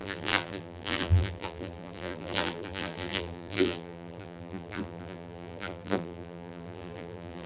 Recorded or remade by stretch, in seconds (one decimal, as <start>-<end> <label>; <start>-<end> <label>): 0.0-7.5 remade